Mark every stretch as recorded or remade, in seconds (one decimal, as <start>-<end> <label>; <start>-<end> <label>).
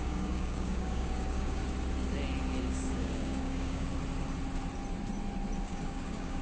0.0-1.6 remade; 1.6-2.6 recorded; 2.6-3.9 remade; 3.9-5.6 recorded; 5.6-6.4 remade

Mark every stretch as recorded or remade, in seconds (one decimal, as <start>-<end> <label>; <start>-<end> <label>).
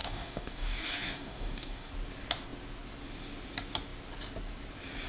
0.0-1.9 remade; 1.9-5.1 recorded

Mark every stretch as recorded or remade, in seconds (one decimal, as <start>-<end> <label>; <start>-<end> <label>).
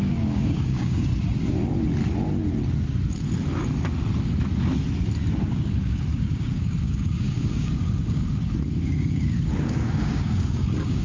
0.0-1.1 remade; 1.1-5.4 recorded; 5.4-11.0 remade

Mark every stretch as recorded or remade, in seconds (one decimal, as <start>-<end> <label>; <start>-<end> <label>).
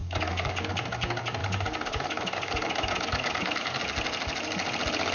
0.0-0.7 remade; 0.7-1.4 recorded; 1.4-3.8 remade; 3.8-5.1 recorded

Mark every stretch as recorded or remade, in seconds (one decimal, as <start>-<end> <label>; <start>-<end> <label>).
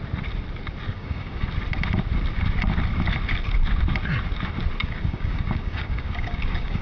0.0-0.9 recorded; 0.9-1.5 remade; 1.5-4.8 recorded; 4.8-6.8 remade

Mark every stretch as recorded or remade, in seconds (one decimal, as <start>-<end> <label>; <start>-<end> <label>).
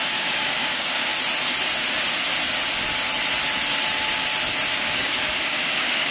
0.0-1.1 remade; 1.1-4.8 recorded; 4.8-6.1 remade